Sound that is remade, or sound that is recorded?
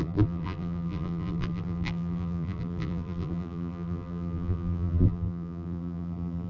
remade